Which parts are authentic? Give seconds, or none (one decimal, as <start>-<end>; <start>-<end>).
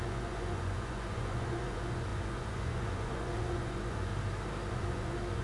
4.1-4.7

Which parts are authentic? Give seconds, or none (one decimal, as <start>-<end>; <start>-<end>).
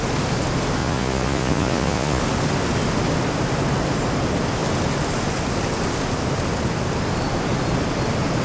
0.0-0.8; 2.2-8.4